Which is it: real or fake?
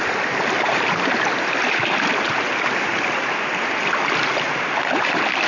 real